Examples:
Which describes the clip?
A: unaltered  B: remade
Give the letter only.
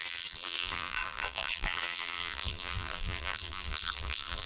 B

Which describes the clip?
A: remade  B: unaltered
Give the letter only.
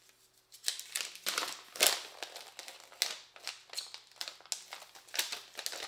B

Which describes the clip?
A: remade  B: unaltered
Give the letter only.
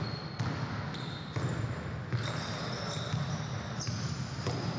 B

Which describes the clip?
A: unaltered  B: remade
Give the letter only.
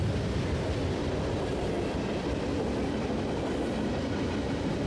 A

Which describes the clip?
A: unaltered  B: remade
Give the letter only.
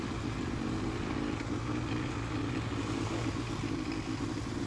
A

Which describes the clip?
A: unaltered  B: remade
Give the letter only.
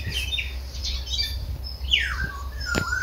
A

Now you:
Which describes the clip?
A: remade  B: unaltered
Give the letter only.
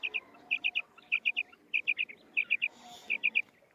B